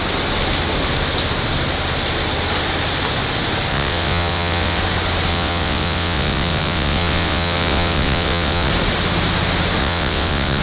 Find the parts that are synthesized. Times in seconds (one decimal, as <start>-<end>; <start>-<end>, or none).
3.7-4.8; 5.3-8.7; 9.8-10.6